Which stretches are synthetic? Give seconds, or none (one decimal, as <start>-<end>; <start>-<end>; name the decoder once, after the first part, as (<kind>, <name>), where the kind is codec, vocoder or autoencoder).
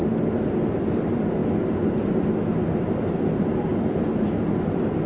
3.7-4.3 (vocoder, BigVGAN v2)